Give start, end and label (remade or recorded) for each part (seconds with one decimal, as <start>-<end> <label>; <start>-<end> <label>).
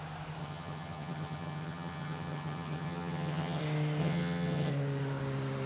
0.0-0.4 recorded; 0.4-3.6 remade; 3.6-4.0 recorded; 4.0-4.7 remade; 4.7-5.7 recorded